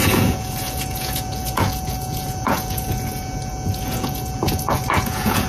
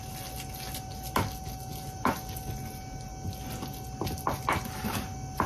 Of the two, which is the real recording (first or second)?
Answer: second